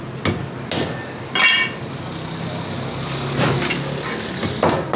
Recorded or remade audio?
recorded